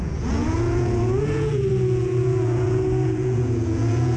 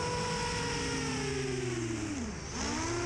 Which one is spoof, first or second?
first